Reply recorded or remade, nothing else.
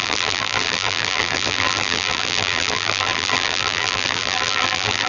remade